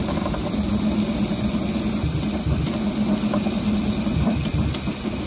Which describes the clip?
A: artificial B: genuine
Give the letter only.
B